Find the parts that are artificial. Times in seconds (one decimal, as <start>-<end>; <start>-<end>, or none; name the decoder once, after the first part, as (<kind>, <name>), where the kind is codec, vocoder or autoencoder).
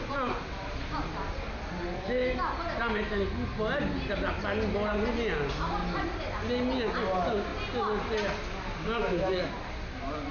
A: 9.0-9.5 (autoencoder, DAC-VAE)